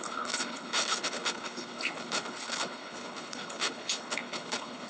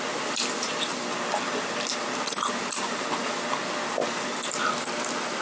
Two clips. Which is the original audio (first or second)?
second